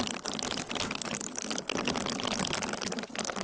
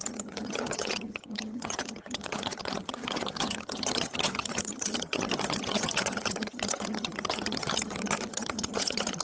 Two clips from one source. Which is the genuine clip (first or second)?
first